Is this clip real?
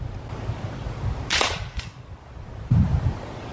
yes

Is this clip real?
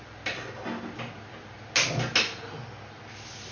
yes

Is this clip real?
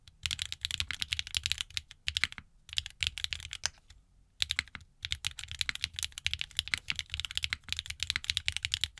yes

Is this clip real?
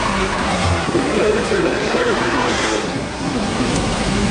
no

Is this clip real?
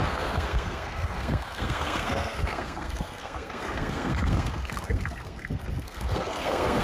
no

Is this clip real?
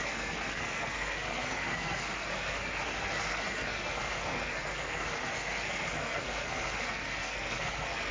no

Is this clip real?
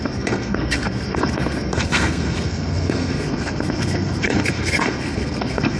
no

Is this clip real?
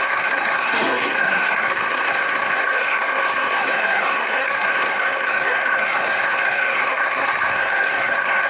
no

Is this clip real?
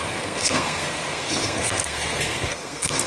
no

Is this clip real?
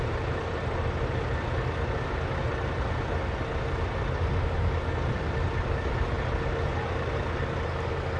yes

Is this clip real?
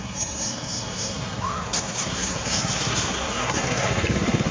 no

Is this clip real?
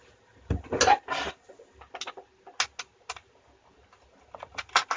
yes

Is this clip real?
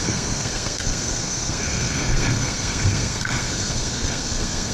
no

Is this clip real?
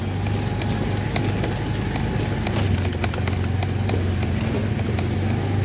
yes